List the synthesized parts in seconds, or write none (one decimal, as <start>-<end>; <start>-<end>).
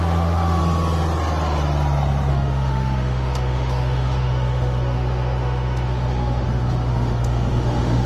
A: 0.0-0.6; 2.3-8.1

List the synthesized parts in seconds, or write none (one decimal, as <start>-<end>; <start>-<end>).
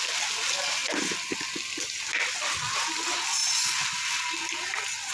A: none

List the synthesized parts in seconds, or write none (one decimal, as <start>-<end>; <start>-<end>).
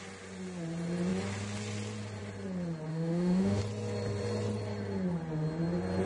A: 2.9-3.6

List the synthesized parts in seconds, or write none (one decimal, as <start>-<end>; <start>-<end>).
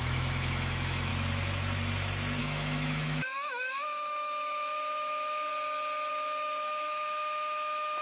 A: 0.0-1.1; 2.4-5.5; 6.1-8.0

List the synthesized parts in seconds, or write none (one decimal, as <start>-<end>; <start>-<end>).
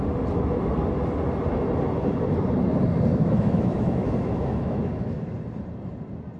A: 3.1-5.3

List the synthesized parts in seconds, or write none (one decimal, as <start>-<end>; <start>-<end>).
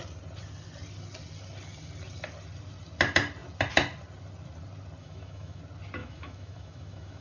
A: 5.0-5.6; 6.0-7.2